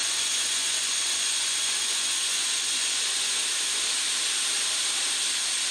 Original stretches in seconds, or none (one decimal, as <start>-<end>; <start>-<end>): 3.4-5.7